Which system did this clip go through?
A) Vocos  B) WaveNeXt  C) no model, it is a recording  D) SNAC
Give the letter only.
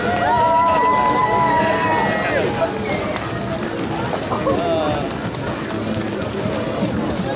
C